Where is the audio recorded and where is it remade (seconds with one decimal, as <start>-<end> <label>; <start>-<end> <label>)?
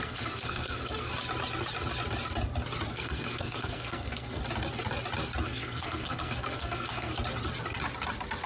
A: 0.0-1.1 remade; 1.1-2.9 recorded; 2.9-4.4 remade; 4.4-5.4 recorded; 5.4-7.1 remade; 7.1-8.5 recorded